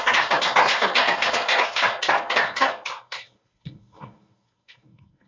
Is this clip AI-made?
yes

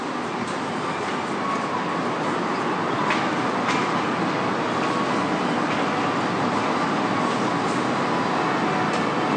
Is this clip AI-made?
no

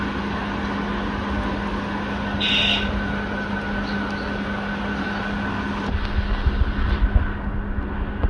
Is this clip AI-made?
no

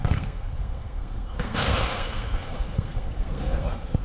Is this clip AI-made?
yes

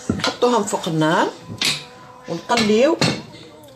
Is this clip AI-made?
yes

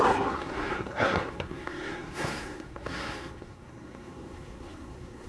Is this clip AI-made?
yes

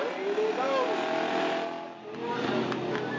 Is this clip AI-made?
no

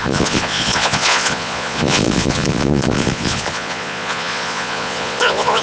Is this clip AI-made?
yes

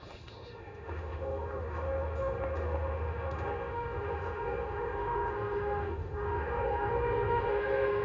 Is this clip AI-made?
yes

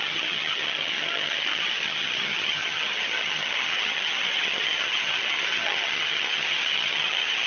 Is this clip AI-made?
yes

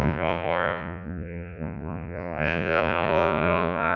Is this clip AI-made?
yes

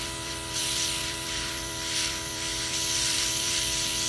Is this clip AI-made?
yes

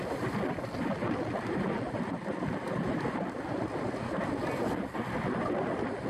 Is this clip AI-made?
no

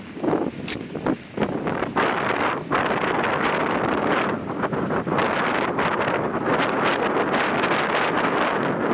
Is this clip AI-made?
no